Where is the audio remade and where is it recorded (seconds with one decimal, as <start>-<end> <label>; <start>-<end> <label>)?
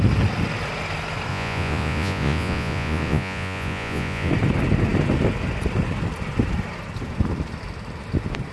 0.0-1.3 recorded; 1.3-4.3 remade; 4.3-8.5 recorded